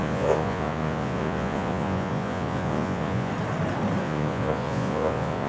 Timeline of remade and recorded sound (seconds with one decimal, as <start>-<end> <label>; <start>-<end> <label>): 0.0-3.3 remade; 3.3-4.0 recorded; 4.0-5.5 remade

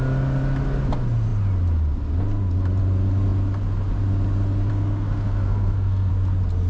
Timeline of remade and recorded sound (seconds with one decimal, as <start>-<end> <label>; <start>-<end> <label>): 0.0-4.7 recorded; 4.7-6.1 remade; 6.1-6.7 recorded

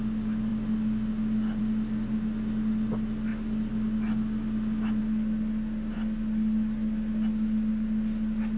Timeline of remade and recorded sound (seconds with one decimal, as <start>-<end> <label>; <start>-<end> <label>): 0.0-8.6 recorded

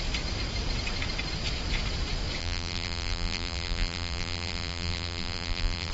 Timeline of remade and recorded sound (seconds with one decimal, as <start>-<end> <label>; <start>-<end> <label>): 0.0-2.4 recorded; 2.4-5.9 remade

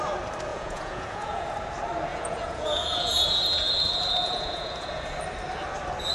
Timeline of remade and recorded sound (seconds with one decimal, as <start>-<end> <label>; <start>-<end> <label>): 0.0-0.5 recorded; 0.5-1.5 remade; 1.5-2.1 recorded; 2.1-5.1 remade; 5.1-6.1 recorded

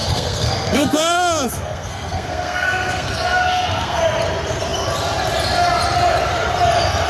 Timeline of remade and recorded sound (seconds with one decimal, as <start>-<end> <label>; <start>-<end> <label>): 0.0-4.0 remade; 4.0-7.1 recorded

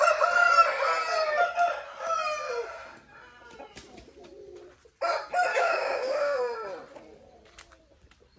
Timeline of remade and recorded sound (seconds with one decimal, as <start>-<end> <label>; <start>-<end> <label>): 0.0-5.5 recorded; 5.5-6.4 remade; 6.4-8.4 recorded